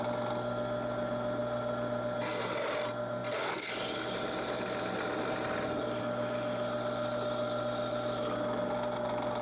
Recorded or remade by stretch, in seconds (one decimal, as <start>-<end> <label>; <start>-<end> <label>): 0.0-9.4 recorded